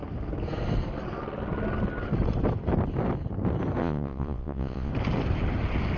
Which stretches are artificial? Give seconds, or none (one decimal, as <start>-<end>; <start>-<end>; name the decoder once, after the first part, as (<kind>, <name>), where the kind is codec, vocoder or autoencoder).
3.8-4.9 (vocoder, Vocos)